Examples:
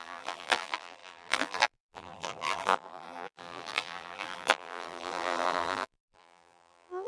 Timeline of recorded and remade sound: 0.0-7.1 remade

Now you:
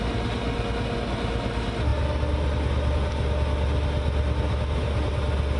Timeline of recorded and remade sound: 0.0-5.6 recorded

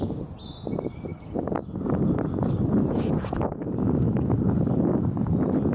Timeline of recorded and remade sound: 0.0-5.7 recorded